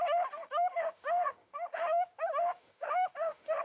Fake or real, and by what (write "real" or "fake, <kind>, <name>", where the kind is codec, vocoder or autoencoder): fake, autoencoder, DAC-VAE